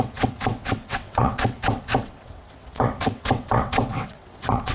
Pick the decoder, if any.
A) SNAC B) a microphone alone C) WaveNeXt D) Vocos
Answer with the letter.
C